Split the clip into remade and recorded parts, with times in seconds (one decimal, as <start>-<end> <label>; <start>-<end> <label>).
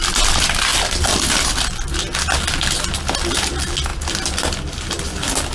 0.0-0.7 recorded; 0.7-2.0 remade; 2.0-5.5 recorded